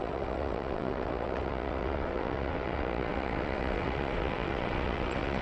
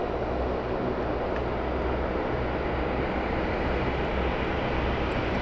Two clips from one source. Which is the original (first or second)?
second